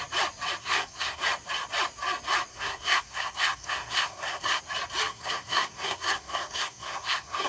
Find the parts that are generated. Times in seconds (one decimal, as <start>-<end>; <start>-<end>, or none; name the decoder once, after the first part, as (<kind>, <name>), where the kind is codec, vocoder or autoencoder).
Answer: 0.6-1.2 (codec, SNAC); 2.5-4.6; 5.1-7.5